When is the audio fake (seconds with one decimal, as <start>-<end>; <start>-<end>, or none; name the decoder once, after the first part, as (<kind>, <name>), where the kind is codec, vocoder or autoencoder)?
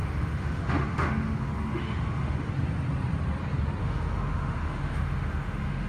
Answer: 0.0-2.5 (autoencoder, DAC-VAE); 3.8-5.9